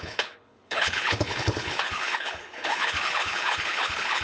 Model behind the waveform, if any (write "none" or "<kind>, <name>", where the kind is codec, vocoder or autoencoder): codec, HILCodec